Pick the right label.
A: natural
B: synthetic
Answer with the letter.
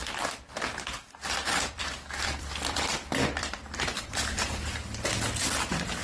B